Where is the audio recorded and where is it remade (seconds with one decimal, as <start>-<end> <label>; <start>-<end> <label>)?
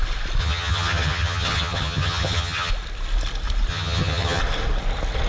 0.0-0.4 recorded; 0.4-2.7 remade; 2.7-3.7 recorded; 3.7-4.4 remade; 4.4-5.3 recorded